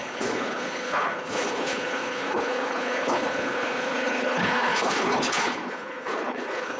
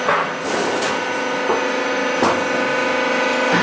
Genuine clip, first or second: second